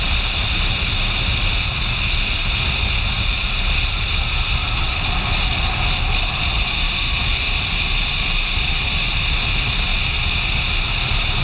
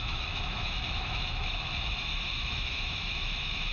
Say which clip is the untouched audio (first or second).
first